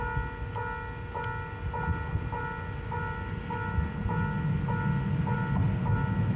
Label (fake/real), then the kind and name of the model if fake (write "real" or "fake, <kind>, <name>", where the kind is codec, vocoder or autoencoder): real